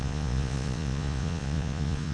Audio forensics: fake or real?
fake